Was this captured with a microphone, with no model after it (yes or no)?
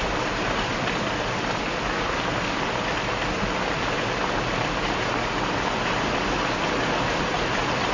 yes